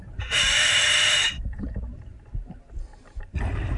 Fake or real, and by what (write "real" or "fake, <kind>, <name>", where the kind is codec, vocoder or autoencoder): real